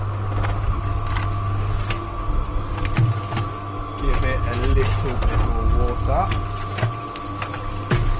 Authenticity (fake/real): real